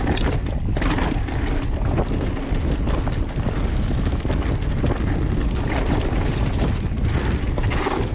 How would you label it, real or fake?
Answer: real